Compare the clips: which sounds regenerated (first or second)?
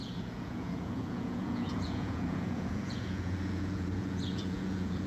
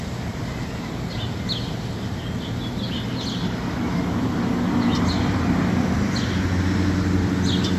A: first